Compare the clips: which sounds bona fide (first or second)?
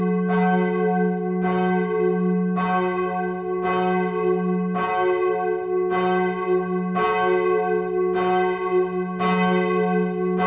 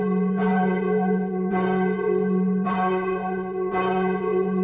first